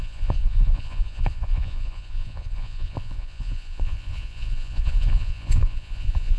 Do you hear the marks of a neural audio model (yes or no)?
yes